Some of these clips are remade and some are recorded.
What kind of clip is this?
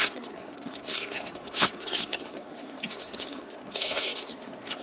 remade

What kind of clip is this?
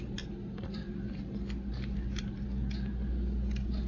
recorded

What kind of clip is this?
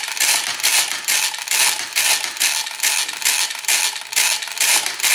recorded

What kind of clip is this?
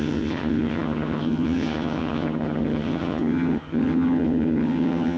remade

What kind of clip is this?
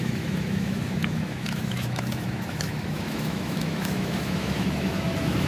remade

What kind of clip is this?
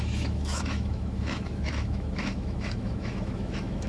remade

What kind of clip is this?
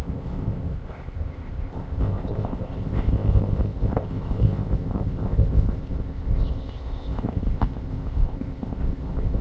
remade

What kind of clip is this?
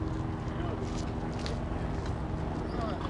recorded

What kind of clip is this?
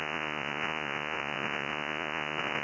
remade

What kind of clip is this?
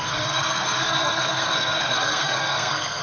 remade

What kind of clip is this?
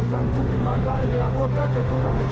remade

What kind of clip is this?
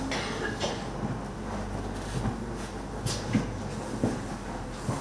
recorded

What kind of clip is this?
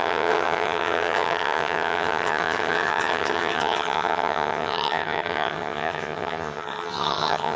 remade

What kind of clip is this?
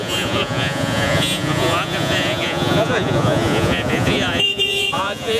remade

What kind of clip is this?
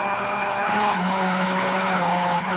remade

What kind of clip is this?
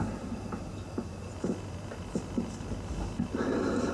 recorded